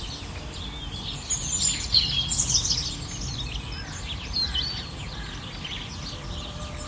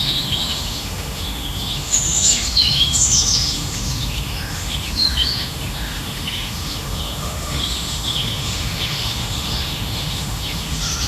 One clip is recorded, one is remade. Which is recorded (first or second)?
first